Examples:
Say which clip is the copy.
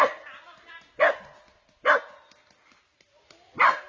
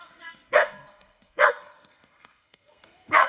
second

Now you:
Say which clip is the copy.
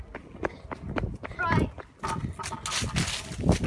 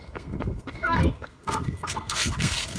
second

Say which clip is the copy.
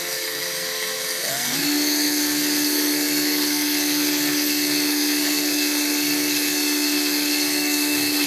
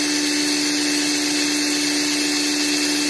first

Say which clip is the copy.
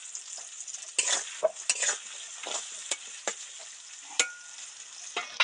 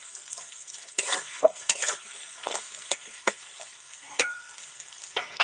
second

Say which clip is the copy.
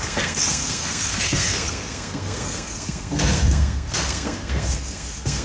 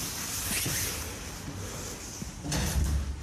first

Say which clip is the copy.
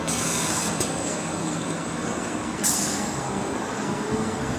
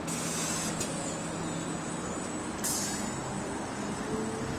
first